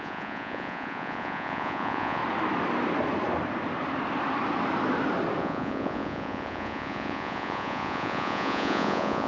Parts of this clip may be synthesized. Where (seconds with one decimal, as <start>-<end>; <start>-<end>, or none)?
0.0-2.2; 5.4-9.3